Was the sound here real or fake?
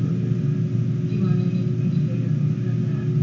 real